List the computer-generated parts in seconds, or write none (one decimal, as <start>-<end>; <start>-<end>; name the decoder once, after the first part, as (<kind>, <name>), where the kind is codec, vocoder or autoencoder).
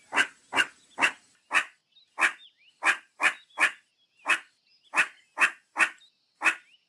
none